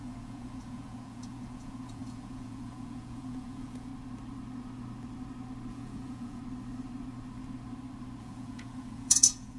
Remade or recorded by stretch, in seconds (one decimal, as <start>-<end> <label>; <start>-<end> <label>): 0.0-3.9 remade; 3.9-5.7 recorded; 5.7-6.4 remade; 6.4-8.2 recorded; 8.2-9.6 remade